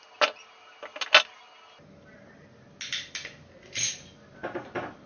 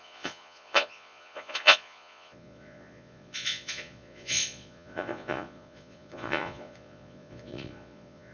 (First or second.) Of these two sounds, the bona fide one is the first